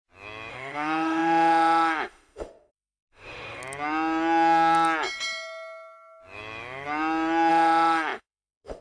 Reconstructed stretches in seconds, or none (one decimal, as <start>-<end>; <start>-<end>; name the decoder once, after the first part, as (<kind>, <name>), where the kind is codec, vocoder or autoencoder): 0.5-3.6 (autoencoder, DAC-VAE); 7.5-8.8